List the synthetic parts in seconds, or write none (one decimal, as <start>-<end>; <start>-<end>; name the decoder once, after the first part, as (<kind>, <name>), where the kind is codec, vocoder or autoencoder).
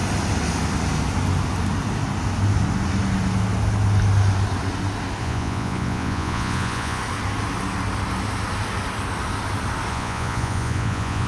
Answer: 5.2-7.0 (vocoder, Vocos); 9.9-11.3